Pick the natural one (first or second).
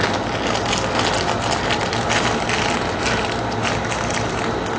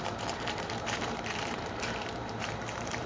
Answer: first